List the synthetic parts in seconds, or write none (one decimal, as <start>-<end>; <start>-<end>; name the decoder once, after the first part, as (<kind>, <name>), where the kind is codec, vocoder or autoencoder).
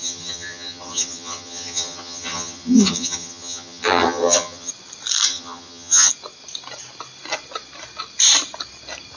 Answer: 0.0-4.7 (vocoder, HiFi-GAN); 5.3-6.1